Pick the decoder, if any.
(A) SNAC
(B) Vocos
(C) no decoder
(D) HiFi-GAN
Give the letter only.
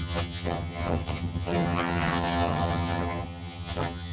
D